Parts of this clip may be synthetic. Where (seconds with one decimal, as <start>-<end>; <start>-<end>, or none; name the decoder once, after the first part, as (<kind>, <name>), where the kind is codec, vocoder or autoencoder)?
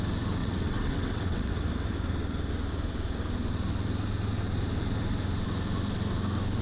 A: 0.4-1.5 (vocoder, WaveNeXt)